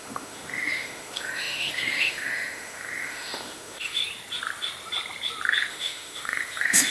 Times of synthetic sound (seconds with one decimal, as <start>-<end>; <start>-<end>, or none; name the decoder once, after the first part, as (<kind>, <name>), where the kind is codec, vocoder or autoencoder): 0.0-4.0 (autoencoder, DAC-VAE); 5.7-6.9